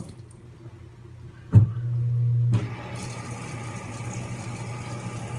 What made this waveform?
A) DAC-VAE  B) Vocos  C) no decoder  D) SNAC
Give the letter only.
C